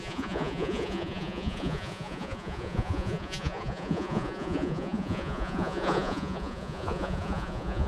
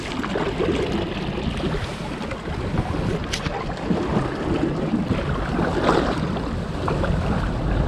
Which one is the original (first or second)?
second